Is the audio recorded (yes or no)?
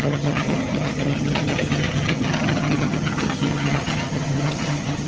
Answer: no